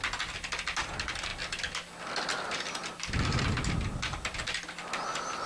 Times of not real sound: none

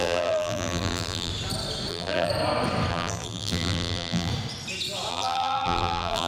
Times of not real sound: 0.0-1.3 (vocoder, BigVGAN v2); 1.9-2.3; 2.9-4.3; 5.1-6.3